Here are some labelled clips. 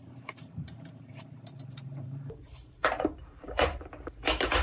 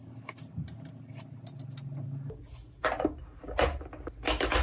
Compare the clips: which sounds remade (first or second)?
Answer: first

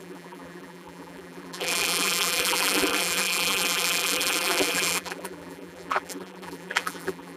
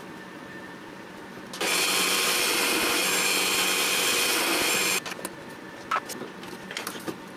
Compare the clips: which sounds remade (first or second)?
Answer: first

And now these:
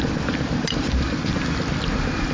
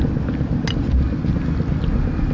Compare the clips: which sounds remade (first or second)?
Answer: first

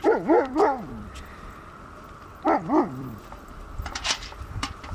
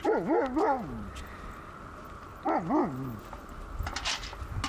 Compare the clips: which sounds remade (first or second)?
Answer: first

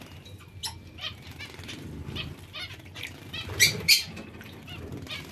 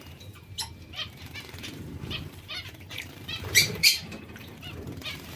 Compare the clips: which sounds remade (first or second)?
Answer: second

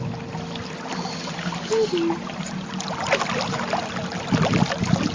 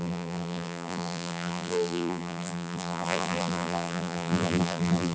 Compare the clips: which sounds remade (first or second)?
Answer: second